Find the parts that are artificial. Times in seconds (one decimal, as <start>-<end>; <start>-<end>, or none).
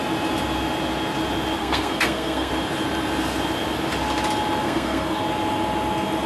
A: 1.6-2.5; 4.6-5.2